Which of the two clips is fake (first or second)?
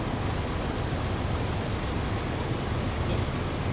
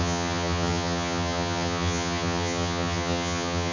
second